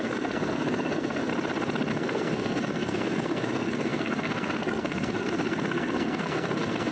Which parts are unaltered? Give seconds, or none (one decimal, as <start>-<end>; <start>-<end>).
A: 1.3-1.9